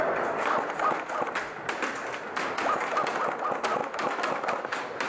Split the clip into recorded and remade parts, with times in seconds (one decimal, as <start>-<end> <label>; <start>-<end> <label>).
0.0-3.8 recorded; 3.8-4.5 remade; 4.5-5.1 recorded